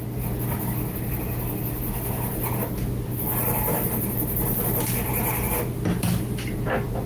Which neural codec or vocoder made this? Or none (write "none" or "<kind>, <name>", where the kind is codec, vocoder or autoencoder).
none